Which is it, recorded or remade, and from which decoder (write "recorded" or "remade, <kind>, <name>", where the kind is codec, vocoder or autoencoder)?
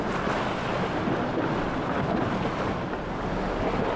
recorded